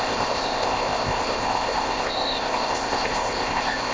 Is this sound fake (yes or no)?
yes